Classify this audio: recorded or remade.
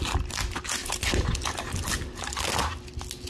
recorded